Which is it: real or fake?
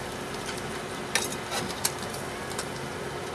real